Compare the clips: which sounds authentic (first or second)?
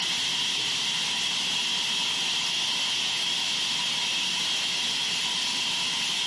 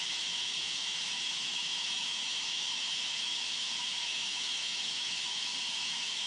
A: first